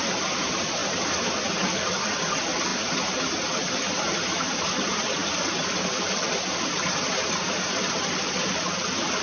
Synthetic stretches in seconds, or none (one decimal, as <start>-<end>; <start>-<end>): 0.0-0.8; 2.2-2.7; 3.2-9.2